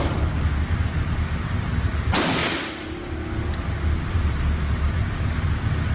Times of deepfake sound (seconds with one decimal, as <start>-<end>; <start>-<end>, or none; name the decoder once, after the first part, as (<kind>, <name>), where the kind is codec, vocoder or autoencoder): none